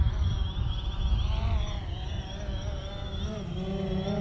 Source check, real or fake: real